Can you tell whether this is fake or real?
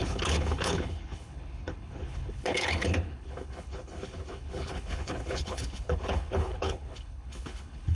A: fake